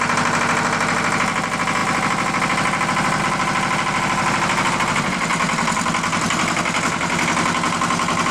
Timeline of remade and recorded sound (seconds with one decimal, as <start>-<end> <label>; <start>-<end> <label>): 0.0-4.2 recorded; 4.2-4.7 remade; 4.7-5.3 recorded; 5.3-5.9 remade; 5.9-8.3 recorded